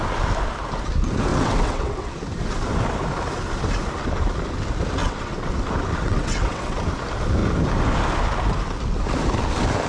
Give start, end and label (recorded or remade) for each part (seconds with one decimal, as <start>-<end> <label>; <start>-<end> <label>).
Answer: 0.0-1.3 recorded; 1.3-2.1 remade; 2.1-5.0 recorded; 5.0-5.5 remade; 5.5-6.0 recorded; 6.0-6.8 remade; 6.8-9.9 recorded

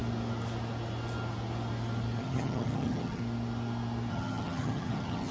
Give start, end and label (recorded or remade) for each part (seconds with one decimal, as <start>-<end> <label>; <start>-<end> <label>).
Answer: 0.0-2.2 recorded; 2.2-3.2 remade; 3.2-4.1 recorded; 4.1-5.3 remade

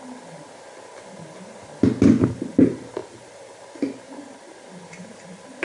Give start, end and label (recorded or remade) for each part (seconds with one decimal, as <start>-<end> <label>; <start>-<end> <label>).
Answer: 0.0-5.6 recorded

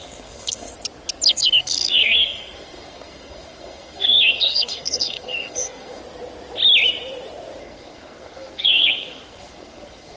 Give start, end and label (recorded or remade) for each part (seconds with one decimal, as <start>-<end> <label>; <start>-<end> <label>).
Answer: 0.0-0.7 remade; 0.7-1.3 recorded; 1.3-6.0 remade; 6.0-7.6 recorded; 7.6-10.2 remade

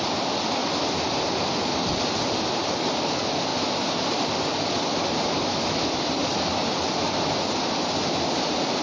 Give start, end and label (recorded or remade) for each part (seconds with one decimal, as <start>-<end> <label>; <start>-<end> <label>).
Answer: 0.0-8.8 recorded